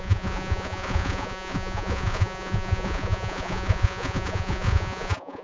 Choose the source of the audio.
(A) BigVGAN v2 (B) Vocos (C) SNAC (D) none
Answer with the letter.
B